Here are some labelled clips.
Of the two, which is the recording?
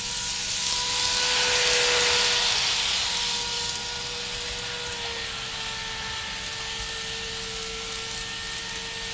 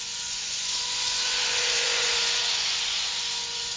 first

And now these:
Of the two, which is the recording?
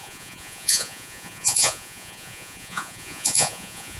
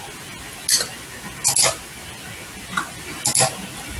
second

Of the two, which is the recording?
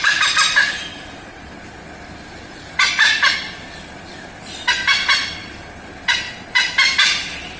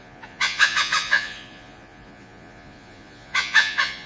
first